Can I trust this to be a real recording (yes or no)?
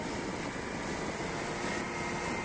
yes